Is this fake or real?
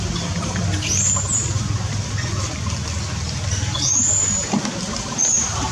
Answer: real